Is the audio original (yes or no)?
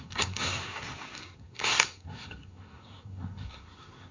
no